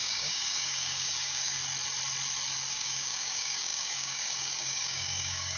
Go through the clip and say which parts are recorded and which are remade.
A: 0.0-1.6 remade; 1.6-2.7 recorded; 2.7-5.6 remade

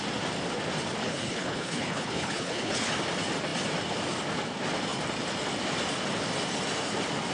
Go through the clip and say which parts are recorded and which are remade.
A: 0.0-1.0 recorded; 1.0-2.9 remade; 2.9-7.3 recorded